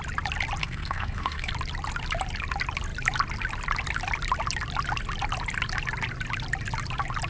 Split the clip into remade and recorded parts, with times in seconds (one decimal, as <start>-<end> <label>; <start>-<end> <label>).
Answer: 0.0-0.6 recorded; 0.6-1.5 remade; 1.5-7.3 recorded